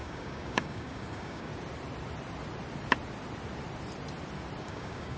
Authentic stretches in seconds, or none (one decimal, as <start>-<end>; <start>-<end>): 1.5-4.6